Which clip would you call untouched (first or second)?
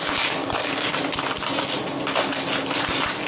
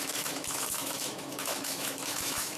first